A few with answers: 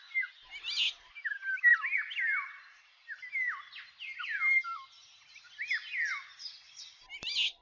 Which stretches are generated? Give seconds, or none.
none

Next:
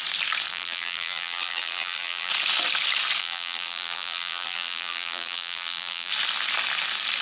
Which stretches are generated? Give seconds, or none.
0.5-2.3 (vocoder, BigVGAN v2); 3.2-6.1

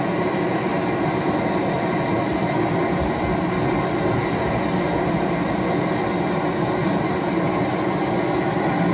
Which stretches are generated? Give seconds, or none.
none

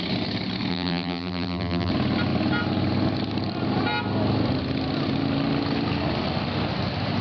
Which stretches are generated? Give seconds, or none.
0.7-1.9 (vocoder, BigVGAN v2)

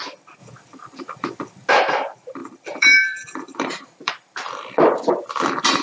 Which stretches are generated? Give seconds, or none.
0.4-1.7 (vocoder, BigVGAN v2); 2.4-4.1